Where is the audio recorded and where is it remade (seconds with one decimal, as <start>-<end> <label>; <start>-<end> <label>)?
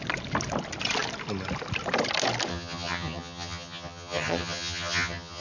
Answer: 0.0-2.5 recorded; 2.5-5.4 remade